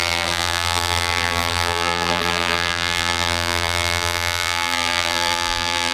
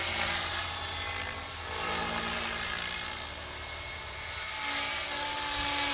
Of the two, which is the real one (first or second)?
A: second